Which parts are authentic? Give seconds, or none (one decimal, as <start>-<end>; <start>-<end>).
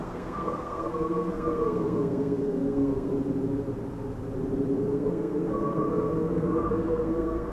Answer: 3.1-4.7